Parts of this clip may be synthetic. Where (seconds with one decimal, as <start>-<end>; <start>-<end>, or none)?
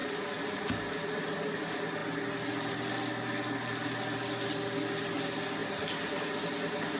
none